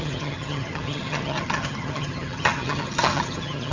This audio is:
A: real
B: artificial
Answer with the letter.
B